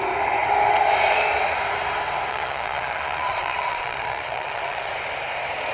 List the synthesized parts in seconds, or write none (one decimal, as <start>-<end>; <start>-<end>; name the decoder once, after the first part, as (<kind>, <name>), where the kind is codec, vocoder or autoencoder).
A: 2.3-4.9 (vocoder, Vocos)